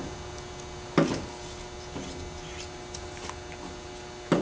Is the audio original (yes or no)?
yes